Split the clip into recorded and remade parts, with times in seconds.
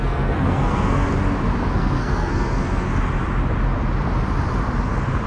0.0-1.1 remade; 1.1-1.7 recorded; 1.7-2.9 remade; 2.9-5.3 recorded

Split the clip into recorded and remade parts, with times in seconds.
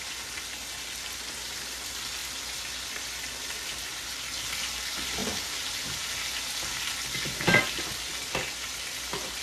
0.0-9.4 recorded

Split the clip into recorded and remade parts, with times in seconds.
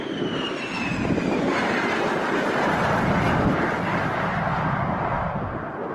0.0-5.9 recorded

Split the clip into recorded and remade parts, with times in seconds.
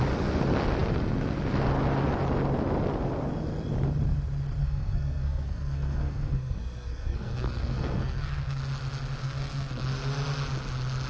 0.0-4.6 recorded; 4.6-8.6 remade; 8.6-9.2 recorded; 9.2-9.7 remade; 9.7-11.1 recorded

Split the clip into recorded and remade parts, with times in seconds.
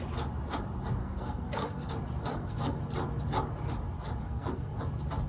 0.0-1.0 recorded; 1.0-1.9 remade; 1.9-2.3 recorded; 2.3-2.8 remade; 2.8-4.2 recorded; 4.2-4.8 remade; 4.8-5.3 recorded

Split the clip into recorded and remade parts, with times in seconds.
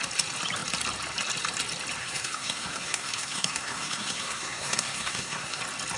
0.0-2.0 recorded; 2.0-5.6 remade; 5.6-6.0 recorded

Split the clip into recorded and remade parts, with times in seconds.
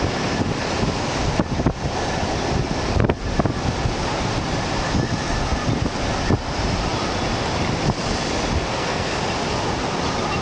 0.0-8.7 recorded; 8.7-9.2 remade; 9.2-10.4 recorded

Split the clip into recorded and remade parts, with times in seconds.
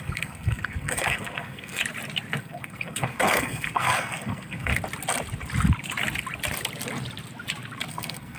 0.0-1.8 remade; 1.8-2.4 recorded; 2.4-4.7 remade; 4.7-7.9 recorded; 7.9-8.4 remade